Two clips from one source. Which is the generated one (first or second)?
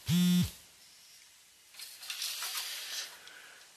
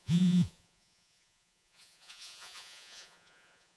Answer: second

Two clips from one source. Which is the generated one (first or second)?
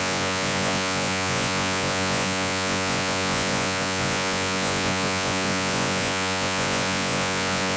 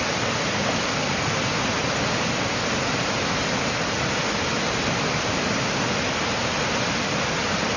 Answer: first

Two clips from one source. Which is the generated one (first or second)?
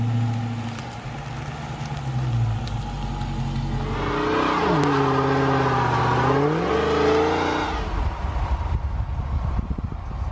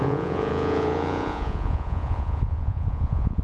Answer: second